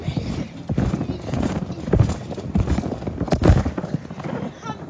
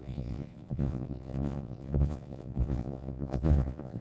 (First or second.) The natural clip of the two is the first